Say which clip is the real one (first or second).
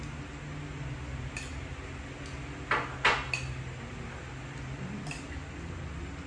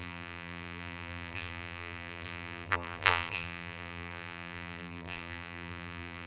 first